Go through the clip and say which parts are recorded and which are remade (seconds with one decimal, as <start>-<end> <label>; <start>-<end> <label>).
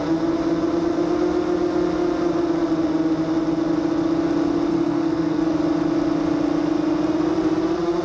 0.0-4.7 recorded; 4.7-5.4 remade; 5.4-8.0 recorded